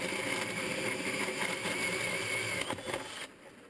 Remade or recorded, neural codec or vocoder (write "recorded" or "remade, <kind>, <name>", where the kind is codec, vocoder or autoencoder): recorded